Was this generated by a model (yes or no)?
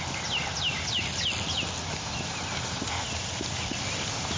no